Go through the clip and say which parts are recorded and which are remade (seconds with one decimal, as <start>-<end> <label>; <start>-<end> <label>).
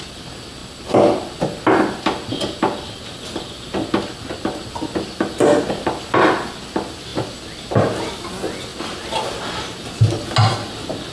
0.0-11.1 recorded